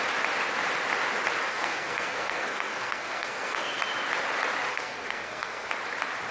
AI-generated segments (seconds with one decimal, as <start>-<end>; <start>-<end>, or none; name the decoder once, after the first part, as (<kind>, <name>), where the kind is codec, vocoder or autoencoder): 1.5-3.8 (codec, SNAC); 4.7-5.7